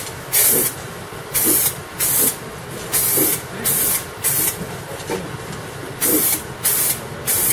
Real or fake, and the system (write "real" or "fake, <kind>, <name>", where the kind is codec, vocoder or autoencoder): real